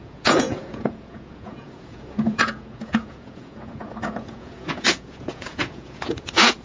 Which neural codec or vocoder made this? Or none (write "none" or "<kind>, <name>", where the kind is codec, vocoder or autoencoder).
vocoder, Vocos